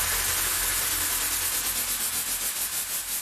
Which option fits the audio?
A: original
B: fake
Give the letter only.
A